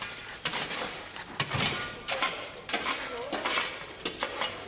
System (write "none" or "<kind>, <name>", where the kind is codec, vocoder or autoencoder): none